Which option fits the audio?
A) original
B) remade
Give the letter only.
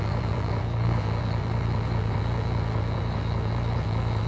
B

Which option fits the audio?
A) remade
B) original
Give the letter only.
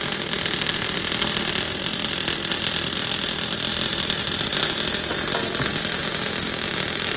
B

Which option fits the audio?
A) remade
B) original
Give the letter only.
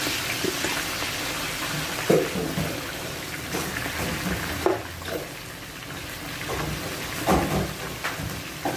B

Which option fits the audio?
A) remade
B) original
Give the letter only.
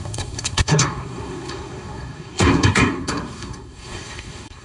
A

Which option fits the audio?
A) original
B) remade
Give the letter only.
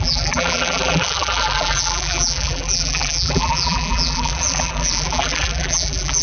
B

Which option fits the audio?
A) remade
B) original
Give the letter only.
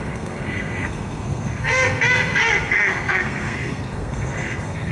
A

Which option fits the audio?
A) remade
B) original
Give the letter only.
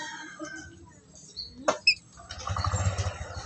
B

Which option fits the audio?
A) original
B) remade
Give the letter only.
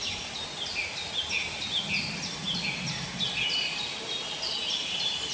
A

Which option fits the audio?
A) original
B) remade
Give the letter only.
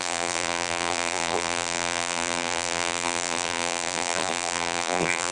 B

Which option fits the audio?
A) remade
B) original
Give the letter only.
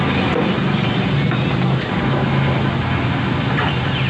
B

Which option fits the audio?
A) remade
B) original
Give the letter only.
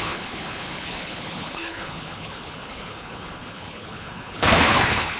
A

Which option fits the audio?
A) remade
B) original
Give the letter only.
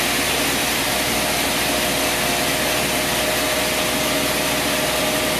B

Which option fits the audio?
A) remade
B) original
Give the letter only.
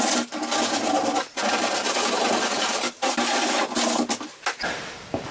B